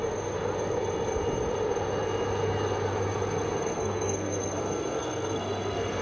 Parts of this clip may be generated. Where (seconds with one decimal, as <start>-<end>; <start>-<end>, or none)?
3.6-6.0